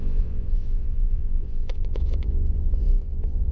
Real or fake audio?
fake